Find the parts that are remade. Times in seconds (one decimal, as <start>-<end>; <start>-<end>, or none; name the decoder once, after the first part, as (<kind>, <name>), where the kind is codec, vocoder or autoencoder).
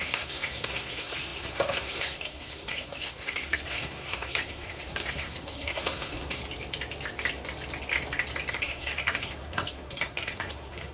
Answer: 0.0-6.4 (codec, SNAC); 8.5-10.9